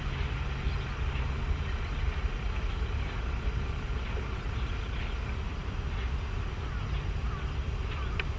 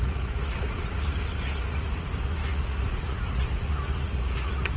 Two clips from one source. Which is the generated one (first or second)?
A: second